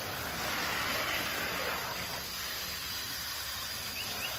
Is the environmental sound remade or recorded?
recorded